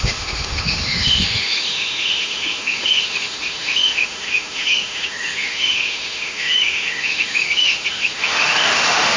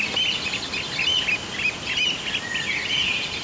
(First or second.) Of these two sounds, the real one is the second